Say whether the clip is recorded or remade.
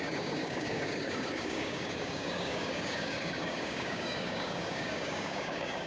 remade